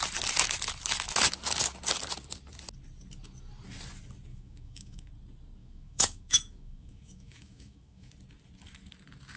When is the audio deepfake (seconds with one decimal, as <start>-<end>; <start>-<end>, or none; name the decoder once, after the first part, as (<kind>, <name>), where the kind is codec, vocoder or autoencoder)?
4.3-5.1 (autoencoder, DAC-VAE); 5.6-8.1